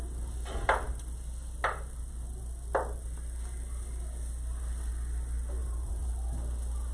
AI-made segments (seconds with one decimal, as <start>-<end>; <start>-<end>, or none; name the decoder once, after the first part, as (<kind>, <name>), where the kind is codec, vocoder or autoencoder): 5.6-6.1 (vocoder, BigVGAN v2)